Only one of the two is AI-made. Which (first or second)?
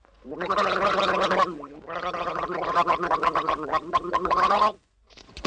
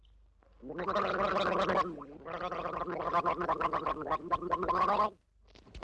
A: first